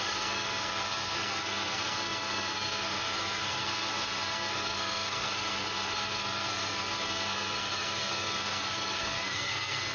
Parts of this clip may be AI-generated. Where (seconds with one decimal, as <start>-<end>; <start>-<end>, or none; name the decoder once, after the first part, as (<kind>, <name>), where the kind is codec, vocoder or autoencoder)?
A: 0.0-9.9 (codec, SNAC)